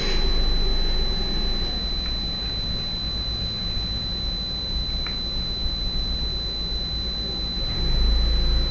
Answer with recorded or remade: recorded